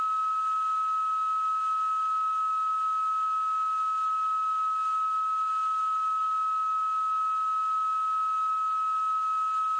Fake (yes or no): no